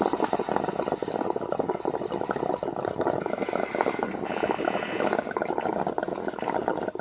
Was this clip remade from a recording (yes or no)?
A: no